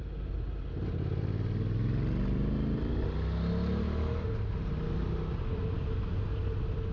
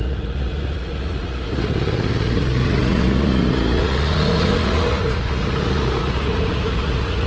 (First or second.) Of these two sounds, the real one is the first